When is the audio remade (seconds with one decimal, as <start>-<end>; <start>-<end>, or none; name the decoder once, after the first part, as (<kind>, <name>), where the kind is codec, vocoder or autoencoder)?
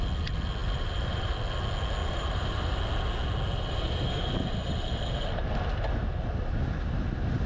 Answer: 0.6-1.3 (vocoder, BigVGAN v2); 2.0-2.8; 3.5-5.7